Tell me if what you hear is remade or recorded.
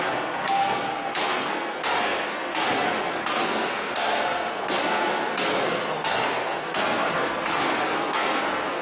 remade